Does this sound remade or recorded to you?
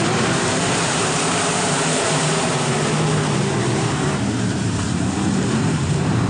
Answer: remade